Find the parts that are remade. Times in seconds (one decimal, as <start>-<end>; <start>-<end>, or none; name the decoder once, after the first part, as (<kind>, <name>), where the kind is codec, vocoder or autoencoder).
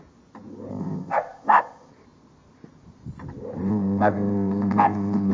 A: 0.7-1.9 (codec, ZipCodec); 3.7-5.3